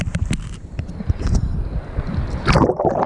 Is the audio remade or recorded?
recorded